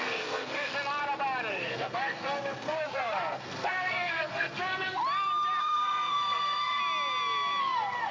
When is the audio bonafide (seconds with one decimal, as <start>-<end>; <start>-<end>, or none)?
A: 0.7-1.5; 5.0-5.6; 6.8-7.6